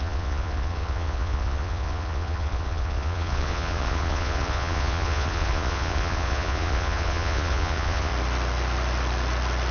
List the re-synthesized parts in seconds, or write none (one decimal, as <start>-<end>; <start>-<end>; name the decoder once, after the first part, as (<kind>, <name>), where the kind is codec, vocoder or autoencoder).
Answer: 0.0-8.1 (vocoder, Vocos)